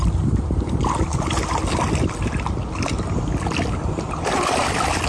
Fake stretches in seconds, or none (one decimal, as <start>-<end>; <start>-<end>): none